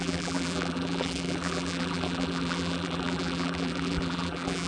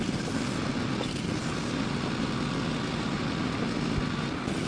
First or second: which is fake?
first